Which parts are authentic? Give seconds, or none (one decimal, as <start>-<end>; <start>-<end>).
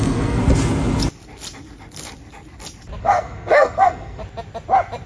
0.4-3.0; 4.2-5.1